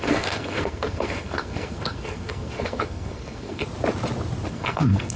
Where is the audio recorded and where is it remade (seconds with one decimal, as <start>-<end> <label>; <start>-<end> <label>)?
0.0-3.6 remade; 3.6-4.5 recorded; 4.5-5.2 remade